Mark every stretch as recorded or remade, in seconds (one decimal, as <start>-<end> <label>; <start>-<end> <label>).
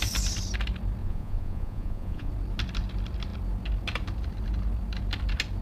0.0-1.0 recorded; 1.0-2.3 remade; 2.3-5.6 recorded